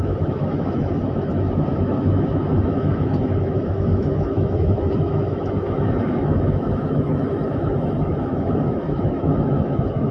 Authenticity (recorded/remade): remade